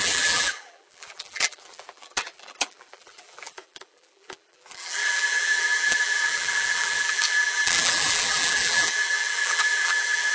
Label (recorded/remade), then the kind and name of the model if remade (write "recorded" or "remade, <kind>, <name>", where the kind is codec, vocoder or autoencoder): remade, vocoder, BigVGAN v2